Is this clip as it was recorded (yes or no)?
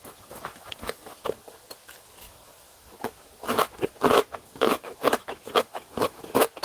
no